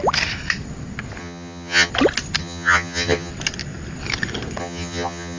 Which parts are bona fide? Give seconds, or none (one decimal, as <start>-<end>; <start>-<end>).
0.0-1.2; 1.9-2.4; 3.3-4.6